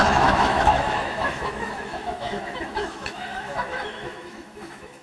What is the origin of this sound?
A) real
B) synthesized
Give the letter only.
B